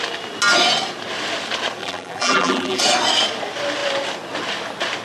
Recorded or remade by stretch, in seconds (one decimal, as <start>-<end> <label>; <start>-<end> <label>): 0.0-1.8 recorded; 1.8-2.8 remade; 2.8-5.0 recorded